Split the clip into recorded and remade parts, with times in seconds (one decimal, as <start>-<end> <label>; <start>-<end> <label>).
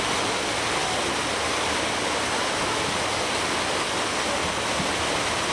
0.0-5.5 recorded